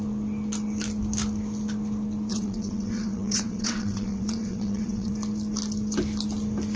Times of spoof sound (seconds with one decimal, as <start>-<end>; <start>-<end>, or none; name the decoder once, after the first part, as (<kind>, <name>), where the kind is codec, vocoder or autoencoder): 2.3-5.1 (vocoder, WaveNeXt)